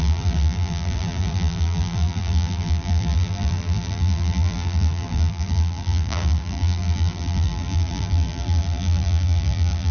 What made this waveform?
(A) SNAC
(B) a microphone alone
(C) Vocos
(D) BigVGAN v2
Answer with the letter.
D